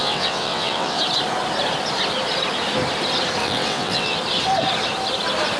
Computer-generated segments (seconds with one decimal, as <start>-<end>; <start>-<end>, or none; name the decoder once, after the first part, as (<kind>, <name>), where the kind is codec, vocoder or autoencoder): 0.0-1.0 (vocoder, WaveNeXt); 3.4-4.2